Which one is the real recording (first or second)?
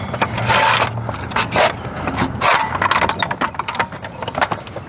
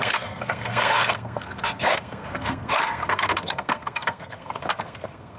first